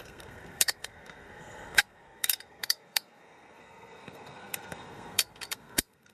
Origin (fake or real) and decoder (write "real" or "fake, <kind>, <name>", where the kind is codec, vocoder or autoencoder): fake, codec, SNAC